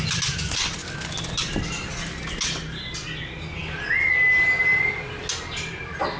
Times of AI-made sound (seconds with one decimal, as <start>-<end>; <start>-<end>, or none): none